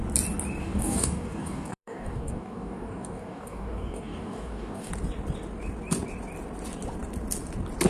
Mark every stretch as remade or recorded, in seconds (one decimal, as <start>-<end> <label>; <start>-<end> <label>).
0.0-0.6 recorded; 0.6-4.9 remade; 4.9-7.9 recorded